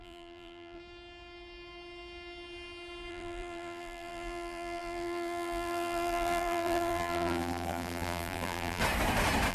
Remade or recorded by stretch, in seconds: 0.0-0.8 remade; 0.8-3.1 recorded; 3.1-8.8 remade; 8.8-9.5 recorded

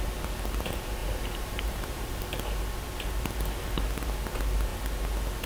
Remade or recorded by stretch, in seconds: 0.0-1.0 recorded; 1.0-2.4 remade; 2.4-5.5 recorded

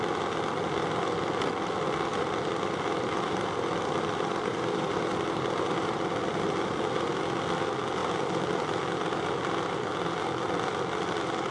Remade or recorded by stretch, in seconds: 0.0-2.1 recorded; 2.1-6.8 remade; 6.8-11.5 recorded

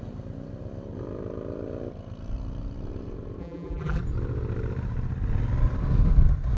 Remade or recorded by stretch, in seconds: 0.0-3.4 recorded; 3.4-4.0 remade; 4.0-6.6 recorded

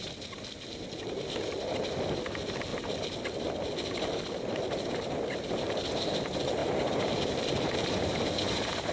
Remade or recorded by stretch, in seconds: 0.0-6.6 recorded; 6.6-8.2 remade; 8.2-8.9 recorded

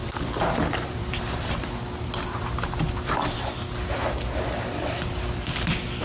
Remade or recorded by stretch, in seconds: 0.0-1.5 remade; 1.5-6.0 recorded

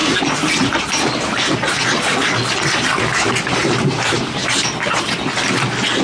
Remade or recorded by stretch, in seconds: 0.0-3.1 recorded; 3.1-4.6 remade; 4.6-6.0 recorded

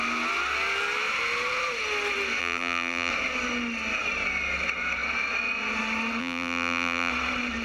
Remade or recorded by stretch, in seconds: 0.0-2.4 recorded; 2.4-3.1 remade; 3.1-6.2 recorded; 6.2-7.1 remade; 7.1-7.6 recorded